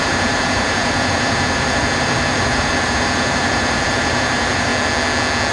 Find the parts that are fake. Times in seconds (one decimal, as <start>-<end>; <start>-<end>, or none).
0.0-4.7